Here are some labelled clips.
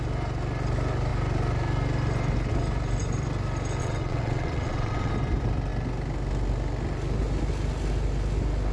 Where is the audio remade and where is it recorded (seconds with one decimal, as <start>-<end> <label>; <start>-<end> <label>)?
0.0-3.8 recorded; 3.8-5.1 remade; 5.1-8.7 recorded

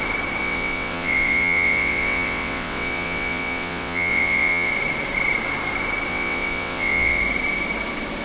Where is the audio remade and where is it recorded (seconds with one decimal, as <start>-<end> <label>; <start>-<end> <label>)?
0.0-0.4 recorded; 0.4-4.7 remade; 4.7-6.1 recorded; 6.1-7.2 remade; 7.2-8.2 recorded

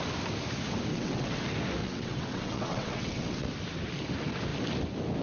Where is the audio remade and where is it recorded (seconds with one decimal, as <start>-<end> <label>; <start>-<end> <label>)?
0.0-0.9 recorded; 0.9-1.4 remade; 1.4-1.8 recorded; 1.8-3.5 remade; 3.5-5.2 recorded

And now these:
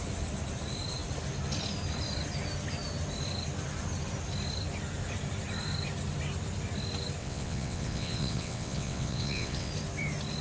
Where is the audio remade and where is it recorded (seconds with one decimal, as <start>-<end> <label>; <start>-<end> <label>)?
0.0-7.2 recorded; 7.2-9.7 remade; 9.7-10.4 recorded

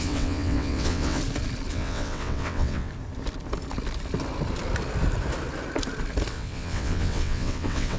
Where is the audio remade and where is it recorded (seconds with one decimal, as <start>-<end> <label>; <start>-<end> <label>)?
0.0-1.2 remade; 1.2-1.7 recorded; 1.7-2.9 remade; 2.9-6.3 recorded; 6.3-8.0 remade

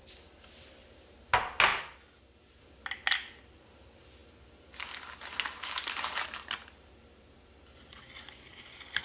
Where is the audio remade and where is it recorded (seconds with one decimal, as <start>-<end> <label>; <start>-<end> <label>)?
0.0-9.0 recorded